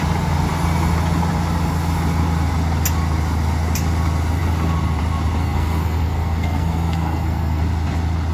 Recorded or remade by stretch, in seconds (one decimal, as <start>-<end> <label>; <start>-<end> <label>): 0.0-5.4 recorded; 5.4-7.6 remade; 7.6-8.3 recorded